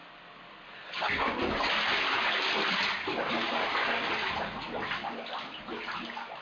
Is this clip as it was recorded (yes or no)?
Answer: yes